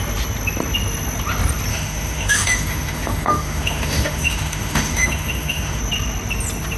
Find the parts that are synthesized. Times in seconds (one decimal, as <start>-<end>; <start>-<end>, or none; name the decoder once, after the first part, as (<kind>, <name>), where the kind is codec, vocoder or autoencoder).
1.7-5.8 (autoencoder, DAC-VAE)

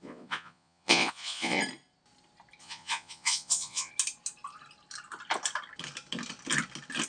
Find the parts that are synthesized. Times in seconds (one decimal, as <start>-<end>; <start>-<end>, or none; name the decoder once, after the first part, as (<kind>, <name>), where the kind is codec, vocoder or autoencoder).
0.0-1.6 (vocoder, Vocos); 2.6-3.9

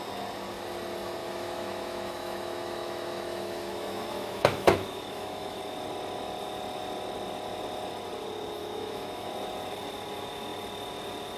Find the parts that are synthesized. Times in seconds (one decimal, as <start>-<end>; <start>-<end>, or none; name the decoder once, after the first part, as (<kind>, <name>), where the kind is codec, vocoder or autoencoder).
1.2-5.6 (autoencoder, DAC-VAE); 8.6-9.3

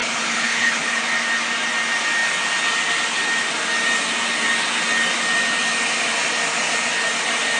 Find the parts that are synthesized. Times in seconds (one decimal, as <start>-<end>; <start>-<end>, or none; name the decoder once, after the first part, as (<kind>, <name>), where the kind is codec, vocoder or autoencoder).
0.0-1.0 (codec, HILCodec)

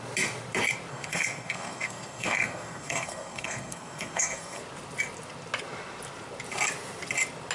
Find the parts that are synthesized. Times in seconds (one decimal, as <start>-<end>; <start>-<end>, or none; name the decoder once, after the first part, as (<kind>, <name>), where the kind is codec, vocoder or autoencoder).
0.9-4.6 (codec, SNAC)

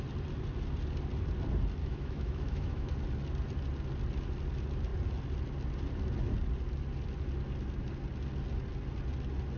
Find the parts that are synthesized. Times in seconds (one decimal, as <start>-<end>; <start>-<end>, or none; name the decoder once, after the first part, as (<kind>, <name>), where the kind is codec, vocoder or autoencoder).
1.8-2.9 (autoencoder, DAC-VAE)

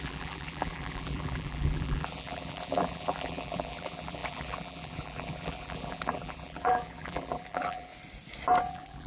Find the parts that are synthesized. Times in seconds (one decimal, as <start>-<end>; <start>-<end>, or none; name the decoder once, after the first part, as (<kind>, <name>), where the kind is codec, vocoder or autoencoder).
0.0-7.9 (vocoder, BigVGAN v2); 8.7-9.1

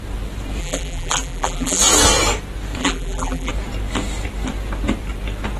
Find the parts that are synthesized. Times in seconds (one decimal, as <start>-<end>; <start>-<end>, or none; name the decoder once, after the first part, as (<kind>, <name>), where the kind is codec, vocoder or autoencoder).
0.6-1.8 (vocoder, BigVGAN v2); 2.8-3.5